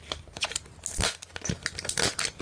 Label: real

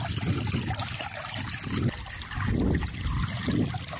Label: real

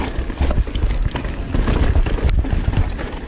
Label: real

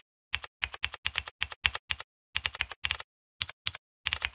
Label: real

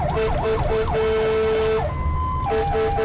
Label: real